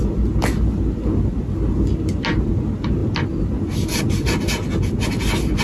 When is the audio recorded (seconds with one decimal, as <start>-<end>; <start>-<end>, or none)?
0.0-5.6